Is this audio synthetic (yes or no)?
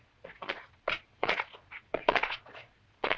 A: yes